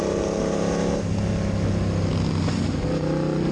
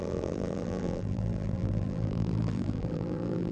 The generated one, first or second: second